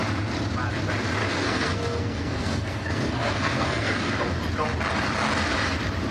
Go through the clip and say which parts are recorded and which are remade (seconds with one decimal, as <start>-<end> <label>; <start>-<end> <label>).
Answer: 0.0-1.3 recorded; 1.3-4.1 remade; 4.1-6.1 recorded